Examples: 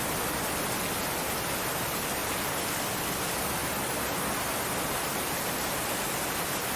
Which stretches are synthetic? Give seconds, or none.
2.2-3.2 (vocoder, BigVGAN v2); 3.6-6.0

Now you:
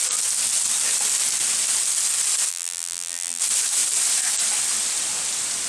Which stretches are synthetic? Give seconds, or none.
2.5-3.4 (vocoder, BigVGAN v2)